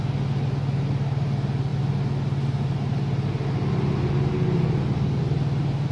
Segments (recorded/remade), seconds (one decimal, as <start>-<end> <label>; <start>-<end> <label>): 0.0-5.9 recorded